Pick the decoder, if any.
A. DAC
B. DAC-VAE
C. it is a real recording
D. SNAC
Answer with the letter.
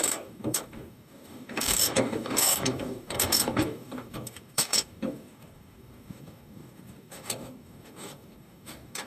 A